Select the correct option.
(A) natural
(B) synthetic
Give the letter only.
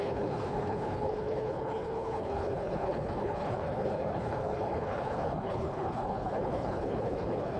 B